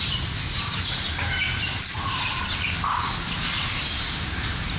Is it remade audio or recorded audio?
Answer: remade